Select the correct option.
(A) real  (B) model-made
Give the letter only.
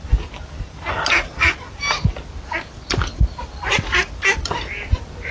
A